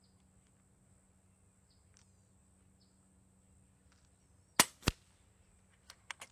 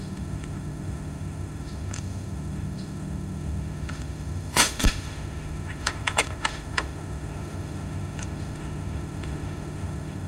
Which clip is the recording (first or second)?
first